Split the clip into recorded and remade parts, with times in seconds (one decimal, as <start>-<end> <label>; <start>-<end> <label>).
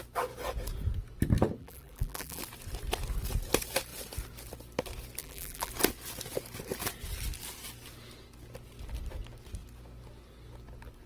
0.0-1.6 recorded; 1.6-2.4 remade; 2.4-5.2 recorded; 5.2-5.7 remade; 5.7-11.1 recorded